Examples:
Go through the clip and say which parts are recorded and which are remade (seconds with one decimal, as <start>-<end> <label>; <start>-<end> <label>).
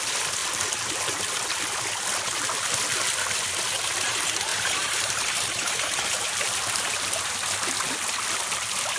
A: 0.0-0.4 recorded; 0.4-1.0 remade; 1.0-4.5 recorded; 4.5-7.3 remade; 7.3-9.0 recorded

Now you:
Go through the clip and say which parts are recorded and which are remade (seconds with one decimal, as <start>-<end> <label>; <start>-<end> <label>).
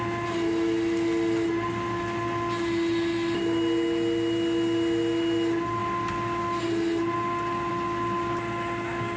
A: 0.0-9.2 recorded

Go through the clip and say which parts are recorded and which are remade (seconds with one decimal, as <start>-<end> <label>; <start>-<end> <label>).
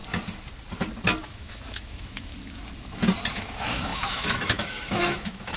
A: 0.0-1.2 recorded; 1.2-2.3 remade; 2.3-3.3 recorded; 3.3-5.6 remade